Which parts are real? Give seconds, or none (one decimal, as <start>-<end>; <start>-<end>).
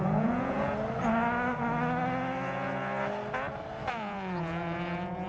0.7-3.9